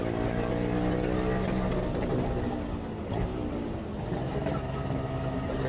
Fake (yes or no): no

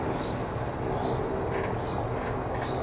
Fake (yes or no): no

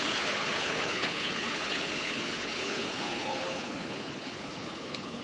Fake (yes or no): yes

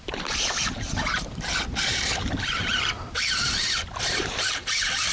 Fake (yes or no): yes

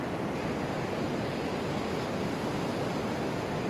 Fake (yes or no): no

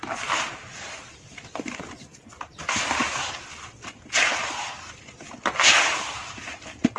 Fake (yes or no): no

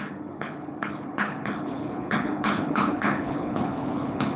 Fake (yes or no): yes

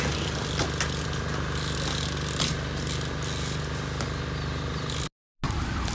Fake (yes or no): no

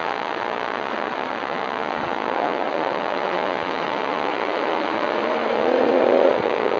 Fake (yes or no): yes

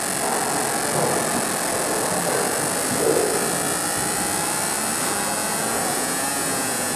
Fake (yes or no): no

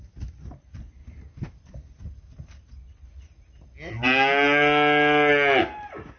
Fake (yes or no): no